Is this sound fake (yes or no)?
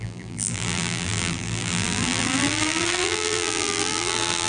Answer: yes